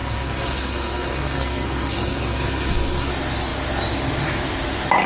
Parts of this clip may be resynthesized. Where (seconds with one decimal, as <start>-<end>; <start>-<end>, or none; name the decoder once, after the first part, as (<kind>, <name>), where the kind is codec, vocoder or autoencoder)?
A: 0.0-3.1 (codec, SNAC)